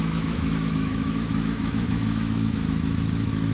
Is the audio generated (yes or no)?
yes